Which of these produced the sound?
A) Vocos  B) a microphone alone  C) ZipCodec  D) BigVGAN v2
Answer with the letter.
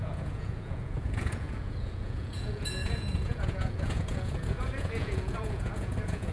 A